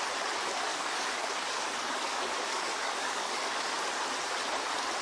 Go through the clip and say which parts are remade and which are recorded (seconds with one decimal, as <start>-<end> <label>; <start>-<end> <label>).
0.0-0.7 recorded; 0.7-3.7 remade; 3.7-5.0 recorded